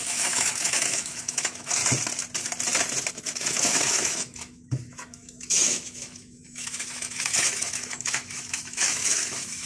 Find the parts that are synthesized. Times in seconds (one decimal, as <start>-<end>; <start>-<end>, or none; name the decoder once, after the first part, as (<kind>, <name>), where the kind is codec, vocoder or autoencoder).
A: 0.0-1.8 (autoencoder, DAC-VAE); 3.1-9.7